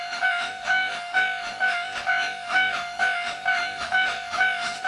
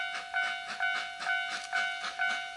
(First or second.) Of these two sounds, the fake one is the first